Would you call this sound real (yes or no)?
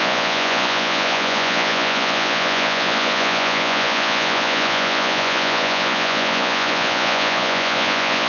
no